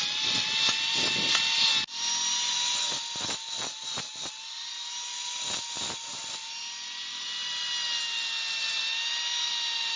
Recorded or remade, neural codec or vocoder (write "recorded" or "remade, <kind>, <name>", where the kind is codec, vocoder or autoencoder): recorded